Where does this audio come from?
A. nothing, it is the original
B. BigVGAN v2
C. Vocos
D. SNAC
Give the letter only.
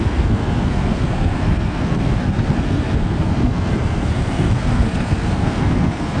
D